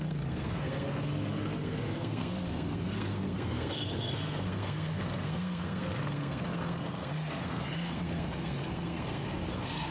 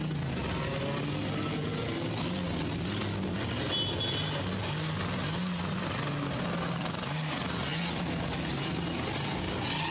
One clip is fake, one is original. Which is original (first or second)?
second